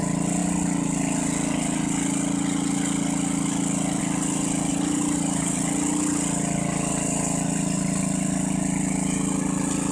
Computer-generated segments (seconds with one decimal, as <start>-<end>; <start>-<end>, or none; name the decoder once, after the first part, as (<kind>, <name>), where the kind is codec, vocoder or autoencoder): 4.7-5.6 (vocoder, BigVGAN v2)